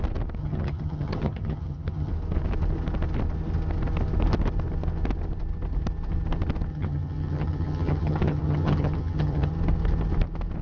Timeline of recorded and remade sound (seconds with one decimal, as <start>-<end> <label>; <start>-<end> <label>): 0.0-0.4 recorded; 0.4-2.1 remade; 2.1-6.7 recorded; 6.7-9.5 remade; 9.5-10.6 recorded